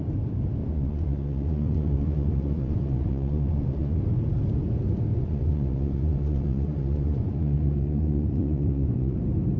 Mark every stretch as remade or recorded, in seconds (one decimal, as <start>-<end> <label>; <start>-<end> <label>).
0.0-0.6 recorded; 0.6-4.0 remade; 4.0-5.1 recorded; 5.1-9.2 remade; 9.2-9.6 recorded